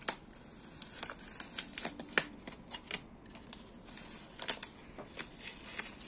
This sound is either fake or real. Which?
real